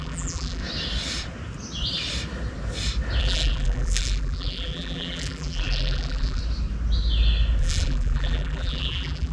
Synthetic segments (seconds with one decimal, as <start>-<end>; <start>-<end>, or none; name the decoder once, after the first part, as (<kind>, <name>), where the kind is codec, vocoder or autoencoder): 0.0-0.6 (vocoder, BigVGAN v2); 3.2-6.4; 7.6-9.3